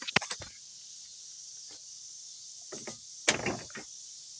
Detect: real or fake real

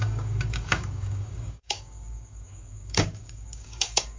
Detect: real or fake fake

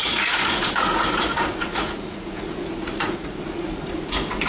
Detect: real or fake fake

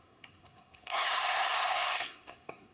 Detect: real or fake fake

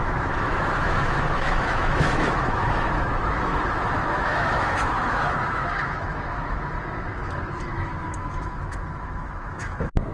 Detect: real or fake fake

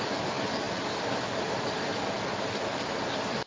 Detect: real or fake real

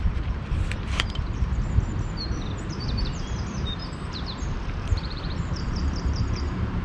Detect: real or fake fake